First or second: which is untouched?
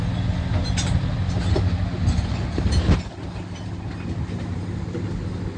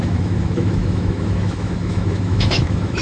first